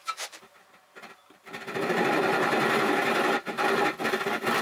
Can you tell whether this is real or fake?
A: fake